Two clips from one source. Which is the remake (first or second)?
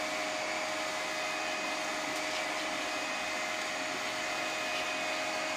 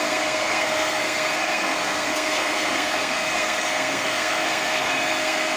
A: second